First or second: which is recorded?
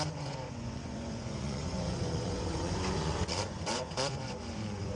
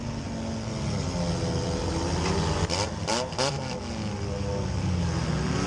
second